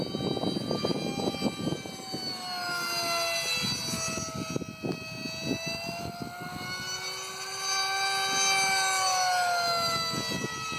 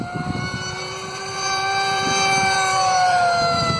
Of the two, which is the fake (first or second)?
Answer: second